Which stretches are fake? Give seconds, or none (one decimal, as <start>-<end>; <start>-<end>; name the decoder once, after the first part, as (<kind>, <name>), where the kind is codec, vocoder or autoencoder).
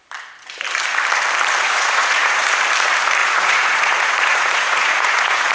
1.6-2.4 (vocoder, Vocos); 3.2-5.5